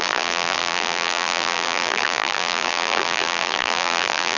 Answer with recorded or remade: remade